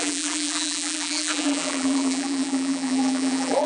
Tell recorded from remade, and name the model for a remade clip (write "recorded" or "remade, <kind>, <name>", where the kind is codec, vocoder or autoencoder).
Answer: remade, vocoder, BigVGAN v2